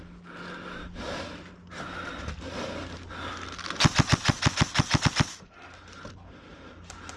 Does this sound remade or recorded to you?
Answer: recorded